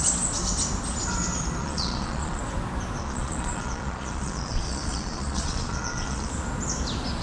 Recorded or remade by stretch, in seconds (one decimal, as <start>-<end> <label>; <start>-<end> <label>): 0.0-1.6 recorded; 1.6-2.4 remade; 2.4-3.0 recorded; 3.0-6.3 remade; 6.3-7.2 recorded